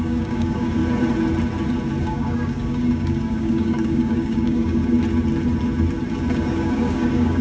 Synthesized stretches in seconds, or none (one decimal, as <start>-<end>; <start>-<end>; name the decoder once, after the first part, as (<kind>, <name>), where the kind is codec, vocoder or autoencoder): 0.0-0.8 (codec, DAC); 2.0-4.8; 6.4-7.4